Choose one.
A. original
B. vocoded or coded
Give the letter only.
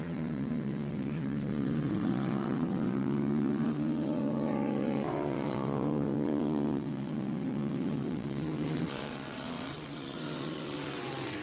B